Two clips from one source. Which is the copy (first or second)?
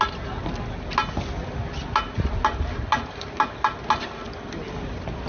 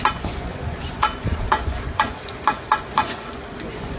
second